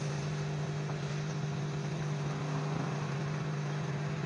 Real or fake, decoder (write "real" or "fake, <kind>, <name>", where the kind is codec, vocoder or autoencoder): real